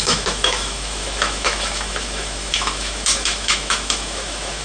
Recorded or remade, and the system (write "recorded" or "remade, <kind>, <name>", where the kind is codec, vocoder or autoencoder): remade, autoencoder, DAC-VAE